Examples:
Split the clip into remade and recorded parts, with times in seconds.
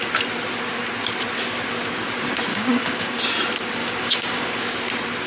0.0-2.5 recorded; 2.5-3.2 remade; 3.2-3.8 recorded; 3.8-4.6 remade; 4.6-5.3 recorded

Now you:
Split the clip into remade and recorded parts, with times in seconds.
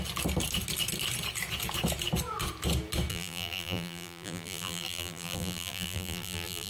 0.0-3.1 recorded; 3.1-6.7 remade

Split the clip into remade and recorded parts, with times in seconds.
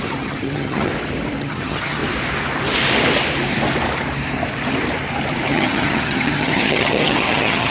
0.0-0.9 remade; 0.9-1.4 recorded; 1.4-2.0 remade; 2.0-5.5 recorded; 5.5-7.7 remade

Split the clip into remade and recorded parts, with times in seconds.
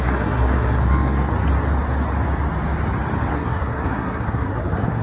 0.0-1.3 remade; 1.3-3.3 recorded; 3.3-5.0 remade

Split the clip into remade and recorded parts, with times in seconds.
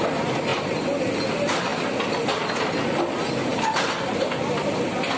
0.0-5.2 recorded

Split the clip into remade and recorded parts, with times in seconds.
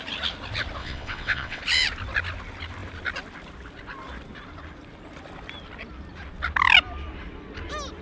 0.0-0.8 recorded; 0.8-1.6 remade; 1.6-8.0 recorded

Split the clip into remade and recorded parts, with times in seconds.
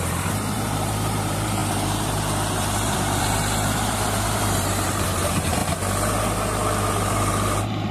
0.0-5.6 remade; 5.6-7.1 recorded; 7.1-7.9 remade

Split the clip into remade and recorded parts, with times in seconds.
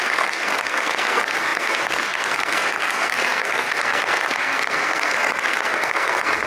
0.0-6.5 remade